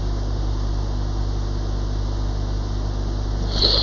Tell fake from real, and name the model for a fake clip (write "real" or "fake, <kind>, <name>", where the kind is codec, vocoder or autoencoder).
real